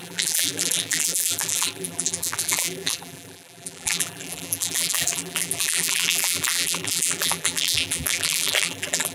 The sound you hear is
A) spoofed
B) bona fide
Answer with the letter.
A